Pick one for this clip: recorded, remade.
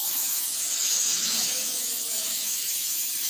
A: remade